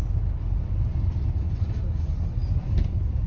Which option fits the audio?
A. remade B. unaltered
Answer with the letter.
B